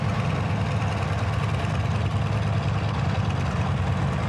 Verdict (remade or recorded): recorded